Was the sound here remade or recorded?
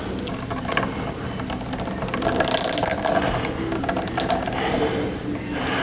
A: recorded